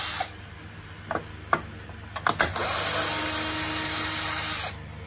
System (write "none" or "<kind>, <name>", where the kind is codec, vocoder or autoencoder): none